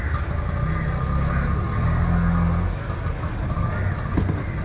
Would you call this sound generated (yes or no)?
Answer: no